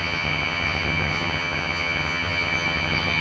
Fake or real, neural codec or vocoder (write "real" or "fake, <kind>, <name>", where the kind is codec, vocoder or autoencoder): fake, vocoder, HiFi-GAN